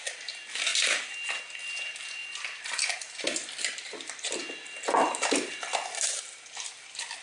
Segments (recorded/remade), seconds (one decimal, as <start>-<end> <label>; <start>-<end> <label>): 0.0-7.2 recorded

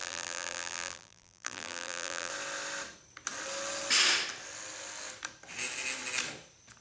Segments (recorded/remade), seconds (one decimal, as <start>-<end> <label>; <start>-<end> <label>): 0.0-2.3 remade; 2.3-6.8 recorded

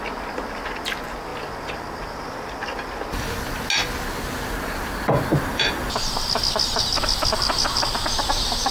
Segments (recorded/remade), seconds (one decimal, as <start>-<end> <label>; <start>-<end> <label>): 0.0-1.3 recorded; 1.3-3.4 remade; 3.4-5.3 recorded; 5.3-8.7 remade

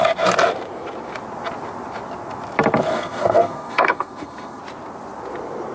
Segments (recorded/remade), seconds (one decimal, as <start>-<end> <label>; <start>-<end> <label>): 0.0-2.9 recorded; 2.9-4.6 remade; 4.6-5.7 recorded

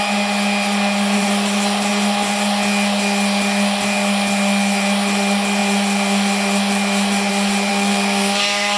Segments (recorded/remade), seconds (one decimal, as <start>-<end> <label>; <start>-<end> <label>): 0.0-7.7 recorded; 7.7-8.8 remade

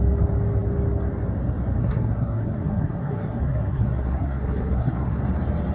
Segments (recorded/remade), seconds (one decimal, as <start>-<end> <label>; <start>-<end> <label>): 0.0-1.8 recorded; 1.8-5.2 remade; 5.2-5.7 recorded